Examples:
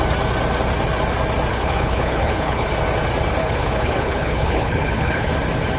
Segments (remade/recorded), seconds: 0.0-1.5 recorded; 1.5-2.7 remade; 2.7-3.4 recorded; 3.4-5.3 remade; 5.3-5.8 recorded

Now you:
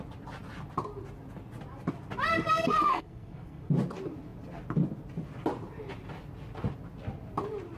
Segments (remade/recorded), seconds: 0.0-2.3 recorded; 2.3-3.7 remade; 3.7-7.8 recorded

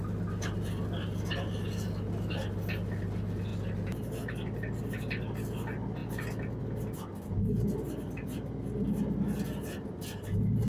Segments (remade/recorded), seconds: 0.0-10.7 recorded

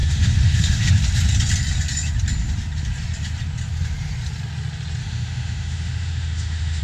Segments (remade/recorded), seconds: 0.0-0.9 remade; 0.9-5.0 recorded; 5.0-6.8 remade